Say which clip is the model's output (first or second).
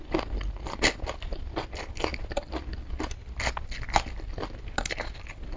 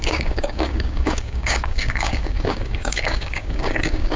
second